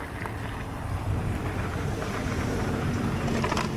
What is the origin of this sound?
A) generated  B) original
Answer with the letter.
B